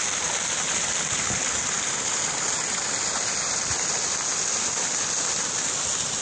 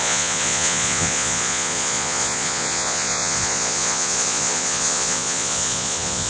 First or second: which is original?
first